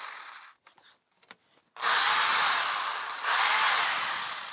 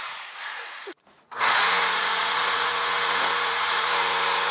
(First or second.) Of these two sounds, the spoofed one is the second